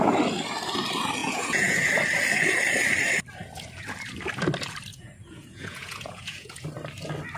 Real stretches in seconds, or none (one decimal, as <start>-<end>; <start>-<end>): 0.0-1.2; 1.9-4.9; 6.6-7.4